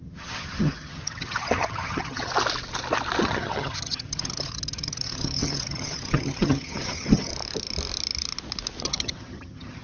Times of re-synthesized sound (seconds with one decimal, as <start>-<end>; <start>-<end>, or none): 0.0-2.3; 3.2-7.3; 8.8-9.8